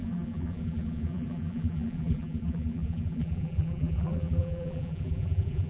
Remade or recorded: remade